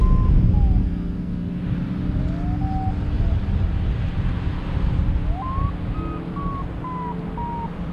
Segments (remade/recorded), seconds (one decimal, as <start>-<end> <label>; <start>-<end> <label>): 0.0-0.8 recorded; 0.8-1.6 remade; 1.6-7.9 recorded

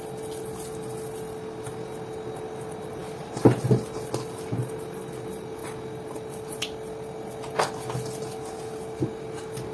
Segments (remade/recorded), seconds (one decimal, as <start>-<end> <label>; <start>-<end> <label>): 0.0-9.7 recorded

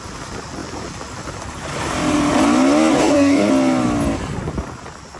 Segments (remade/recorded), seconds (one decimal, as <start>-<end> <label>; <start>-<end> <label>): 0.0-2.9 recorded; 2.9-3.5 remade; 3.5-5.2 recorded